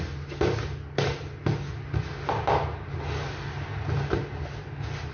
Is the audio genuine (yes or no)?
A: yes